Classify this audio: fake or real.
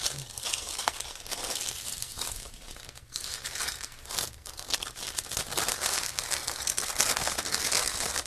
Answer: fake